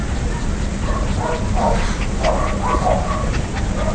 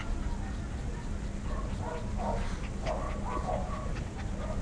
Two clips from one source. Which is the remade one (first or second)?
first